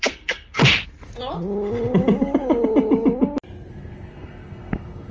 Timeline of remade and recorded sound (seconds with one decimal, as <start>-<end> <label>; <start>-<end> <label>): 0.0-0.6 remade; 0.6-3.7 recorded; 3.7-5.1 remade